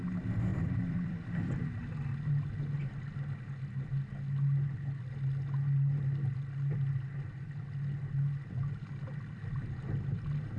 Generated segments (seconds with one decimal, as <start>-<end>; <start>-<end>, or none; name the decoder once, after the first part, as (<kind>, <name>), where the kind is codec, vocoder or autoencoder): 0.5-1.9 (vocoder, BigVGAN v2)